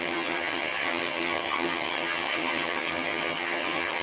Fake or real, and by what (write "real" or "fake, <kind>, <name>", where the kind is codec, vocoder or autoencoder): fake, vocoder, HiFi-GAN